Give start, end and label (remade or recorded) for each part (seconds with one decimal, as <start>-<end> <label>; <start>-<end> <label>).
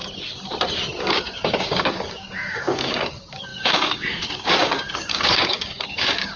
0.0-1.0 recorded; 1.0-6.4 remade